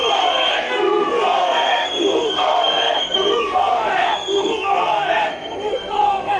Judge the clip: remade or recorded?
remade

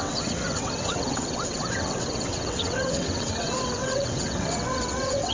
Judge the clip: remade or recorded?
remade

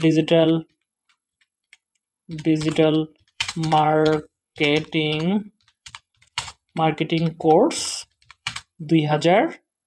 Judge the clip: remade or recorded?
remade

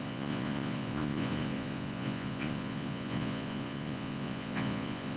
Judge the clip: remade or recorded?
remade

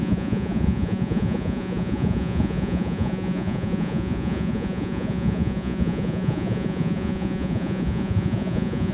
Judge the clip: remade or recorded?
remade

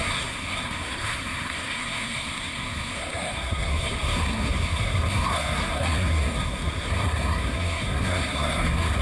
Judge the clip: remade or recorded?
remade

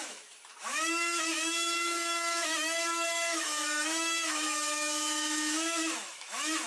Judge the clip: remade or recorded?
remade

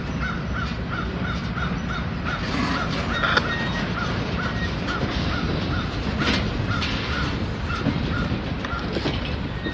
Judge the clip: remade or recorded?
recorded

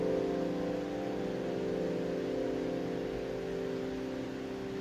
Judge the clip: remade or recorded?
recorded